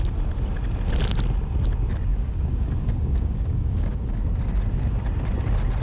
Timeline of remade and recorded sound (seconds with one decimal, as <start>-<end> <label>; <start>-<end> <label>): 0.0-2.1 recorded; 2.1-4.2 remade; 4.2-5.8 recorded